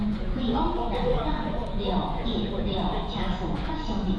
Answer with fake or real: fake